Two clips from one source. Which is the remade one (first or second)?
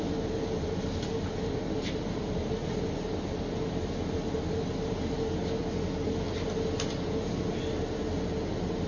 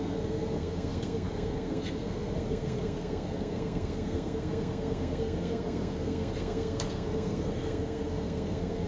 second